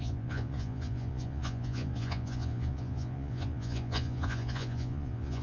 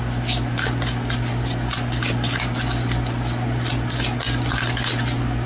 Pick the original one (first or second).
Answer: second